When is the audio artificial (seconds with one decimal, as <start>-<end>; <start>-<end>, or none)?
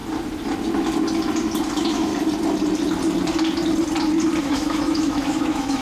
1.7-2.1; 4.4-5.8